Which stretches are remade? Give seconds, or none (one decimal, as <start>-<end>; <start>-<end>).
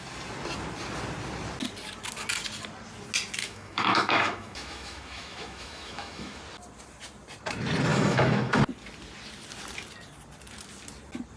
3.4-6.4; 7.9-8.6